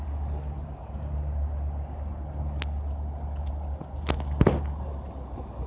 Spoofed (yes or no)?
no